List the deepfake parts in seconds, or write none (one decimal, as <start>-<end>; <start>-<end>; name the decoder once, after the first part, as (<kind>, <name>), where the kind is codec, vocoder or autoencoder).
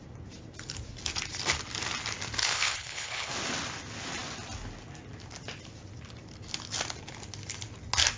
2.4-3.3 (codec, HILCodec)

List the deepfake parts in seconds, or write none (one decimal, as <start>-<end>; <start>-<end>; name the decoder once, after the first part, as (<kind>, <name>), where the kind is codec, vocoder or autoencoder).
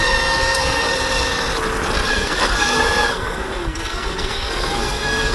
0.0-0.9 (codec, SNAC); 2.1-5.3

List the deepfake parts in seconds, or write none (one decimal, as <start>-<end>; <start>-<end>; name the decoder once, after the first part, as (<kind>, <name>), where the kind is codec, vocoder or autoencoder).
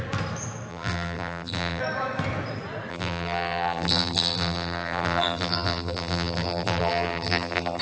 0.7-1.8 (vocoder, BigVGAN v2); 2.9-7.8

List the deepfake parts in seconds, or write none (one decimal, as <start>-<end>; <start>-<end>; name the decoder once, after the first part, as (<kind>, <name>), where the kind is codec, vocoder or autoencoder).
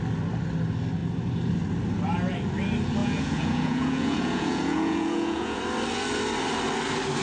3.0-5.6 (vocoder, Vocos)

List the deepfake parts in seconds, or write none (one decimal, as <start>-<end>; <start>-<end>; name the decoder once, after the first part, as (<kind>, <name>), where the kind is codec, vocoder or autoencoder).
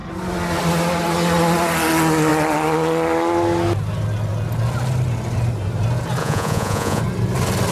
6.2-7.0 (vocoder, Vocos)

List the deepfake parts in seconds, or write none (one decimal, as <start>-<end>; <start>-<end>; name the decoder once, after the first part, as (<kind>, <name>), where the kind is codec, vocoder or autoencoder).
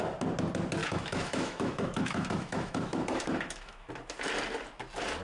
0.8-3.9 (autoencoder, DAC-VAE)